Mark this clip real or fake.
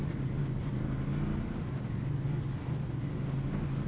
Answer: real